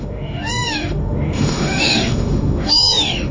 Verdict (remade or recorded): remade